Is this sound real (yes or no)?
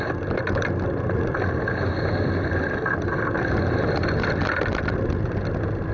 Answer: yes